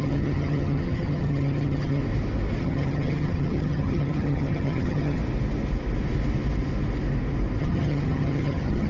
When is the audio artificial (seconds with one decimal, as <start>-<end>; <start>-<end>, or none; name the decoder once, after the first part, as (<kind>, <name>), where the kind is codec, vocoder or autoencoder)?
0.0-2.0 (vocoder, HiFi-GAN); 2.6-5.2; 7.6-8.9